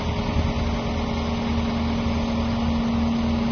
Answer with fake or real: real